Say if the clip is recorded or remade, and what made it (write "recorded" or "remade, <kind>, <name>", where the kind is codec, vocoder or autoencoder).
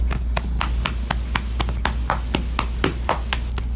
recorded